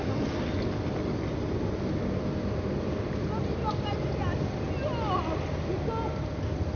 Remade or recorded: recorded